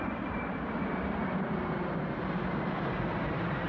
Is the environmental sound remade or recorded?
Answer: remade